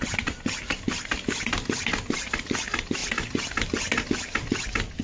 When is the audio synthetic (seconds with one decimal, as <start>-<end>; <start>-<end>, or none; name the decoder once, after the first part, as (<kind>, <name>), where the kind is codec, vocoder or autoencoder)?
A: none